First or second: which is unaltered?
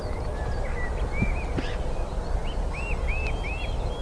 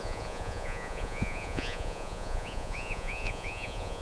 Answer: first